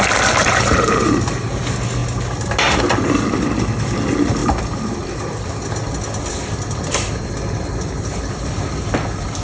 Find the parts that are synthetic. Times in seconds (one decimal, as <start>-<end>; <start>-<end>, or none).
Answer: 0.4-1.6